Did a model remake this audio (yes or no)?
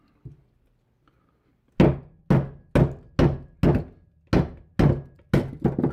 no